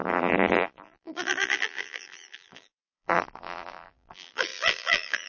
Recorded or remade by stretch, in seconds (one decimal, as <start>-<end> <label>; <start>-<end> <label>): 0.0-5.3 remade